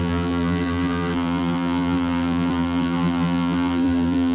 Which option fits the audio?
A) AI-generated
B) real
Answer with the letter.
A